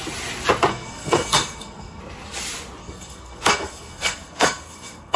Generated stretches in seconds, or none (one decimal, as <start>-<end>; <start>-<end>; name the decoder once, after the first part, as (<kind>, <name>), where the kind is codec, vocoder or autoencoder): 0.7-2.0 (codec, SNAC); 2.8-5.2